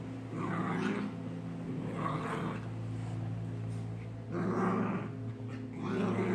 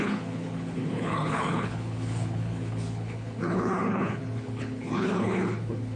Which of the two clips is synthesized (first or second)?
second